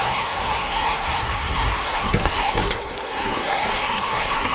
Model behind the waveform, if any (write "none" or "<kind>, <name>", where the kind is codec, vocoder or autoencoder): codec, SNAC